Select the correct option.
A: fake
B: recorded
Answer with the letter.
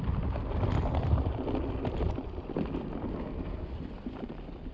B